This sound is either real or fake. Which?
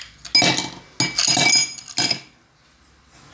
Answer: real